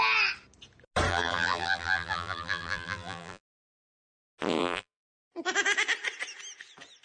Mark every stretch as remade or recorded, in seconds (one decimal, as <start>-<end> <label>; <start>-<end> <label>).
0.0-1.1 recorded; 1.1-3.4 remade; 3.4-4.6 recorded; 4.6-5.2 remade; 5.2-7.0 recorded

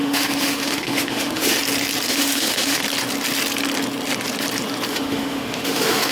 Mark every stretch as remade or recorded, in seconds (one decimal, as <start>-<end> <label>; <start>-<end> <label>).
0.0-1.6 remade; 1.6-2.1 recorded; 2.1-2.8 remade; 2.8-4.9 recorded; 4.9-6.1 remade

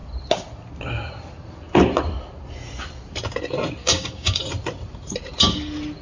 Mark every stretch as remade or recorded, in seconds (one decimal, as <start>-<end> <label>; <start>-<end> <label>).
0.0-3.8 recorded; 3.8-4.4 remade; 4.4-6.0 recorded

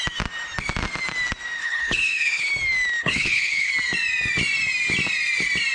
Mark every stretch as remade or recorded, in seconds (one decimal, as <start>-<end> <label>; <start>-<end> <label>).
0.0-1.6 recorded; 1.6-2.5 remade; 2.5-3.0 recorded; 3.0-3.7 remade; 3.7-5.7 recorded